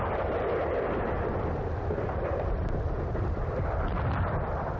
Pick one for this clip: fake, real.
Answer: fake